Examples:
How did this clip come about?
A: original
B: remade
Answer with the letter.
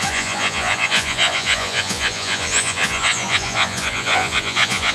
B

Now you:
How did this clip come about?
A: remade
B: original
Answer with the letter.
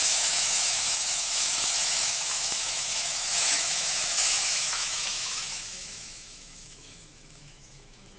A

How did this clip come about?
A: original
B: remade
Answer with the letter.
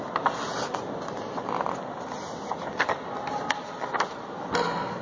A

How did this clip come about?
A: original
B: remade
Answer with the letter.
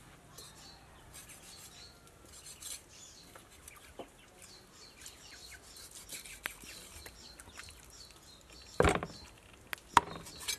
A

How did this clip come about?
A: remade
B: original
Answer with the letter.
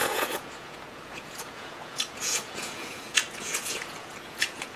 A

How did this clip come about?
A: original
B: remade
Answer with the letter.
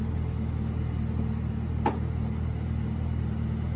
A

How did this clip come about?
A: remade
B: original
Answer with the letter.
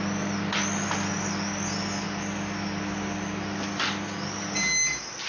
B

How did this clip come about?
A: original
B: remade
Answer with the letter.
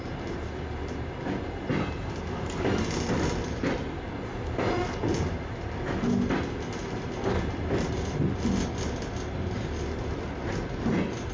A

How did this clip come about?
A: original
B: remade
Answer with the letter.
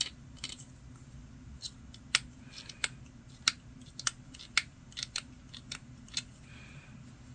A